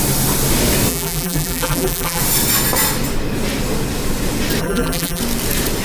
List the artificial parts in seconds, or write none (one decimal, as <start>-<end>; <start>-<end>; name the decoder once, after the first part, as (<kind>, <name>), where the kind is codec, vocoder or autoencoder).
0.9-2.2 (vocoder, BigVGAN v2); 4.6-5.2